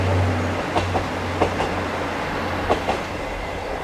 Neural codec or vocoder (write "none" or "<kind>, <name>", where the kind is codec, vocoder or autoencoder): none